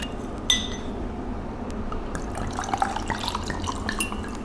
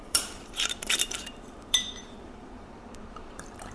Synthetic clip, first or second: second